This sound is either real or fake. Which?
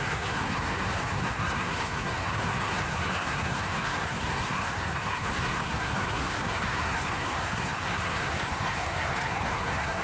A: fake